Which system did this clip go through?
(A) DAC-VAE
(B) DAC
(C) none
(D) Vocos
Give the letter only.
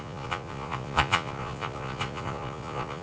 D